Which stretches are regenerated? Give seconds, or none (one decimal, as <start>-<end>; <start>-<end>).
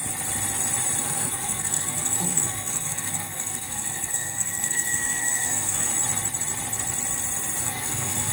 1.0-5.9; 7.6-8.3